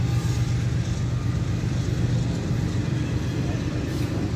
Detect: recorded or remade recorded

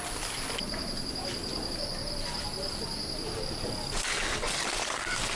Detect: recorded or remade recorded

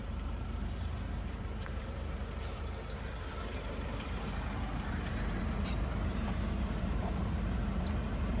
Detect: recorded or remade remade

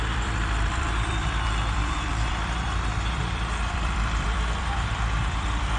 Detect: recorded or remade remade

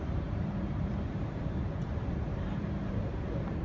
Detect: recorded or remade remade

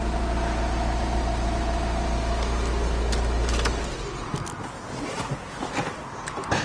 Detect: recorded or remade recorded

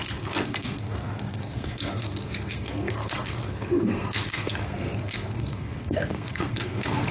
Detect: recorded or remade remade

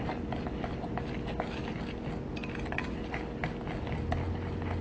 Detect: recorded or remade recorded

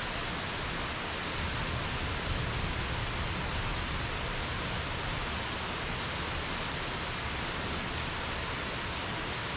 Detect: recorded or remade recorded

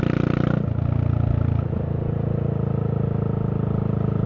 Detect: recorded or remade recorded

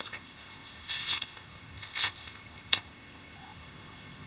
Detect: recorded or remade remade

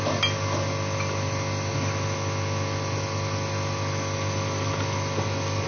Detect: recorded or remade recorded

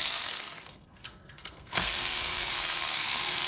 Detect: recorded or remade remade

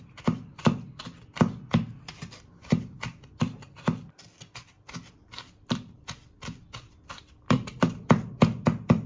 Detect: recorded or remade remade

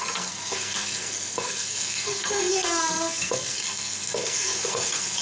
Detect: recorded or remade remade